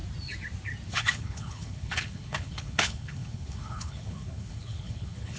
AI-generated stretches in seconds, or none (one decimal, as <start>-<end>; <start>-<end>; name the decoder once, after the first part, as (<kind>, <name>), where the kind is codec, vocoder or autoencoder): 0.9-5.4 (codec, HILCodec)